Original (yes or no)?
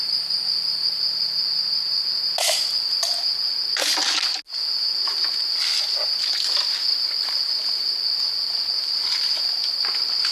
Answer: yes